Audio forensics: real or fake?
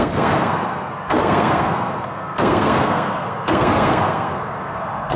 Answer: fake